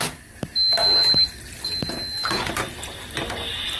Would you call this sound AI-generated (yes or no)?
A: no